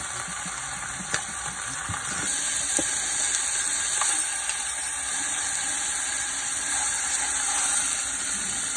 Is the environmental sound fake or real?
real